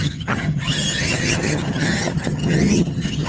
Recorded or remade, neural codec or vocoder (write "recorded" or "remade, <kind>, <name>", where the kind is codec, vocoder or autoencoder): remade, vocoder, HiFi-GAN